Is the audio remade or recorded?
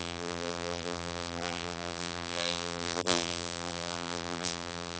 remade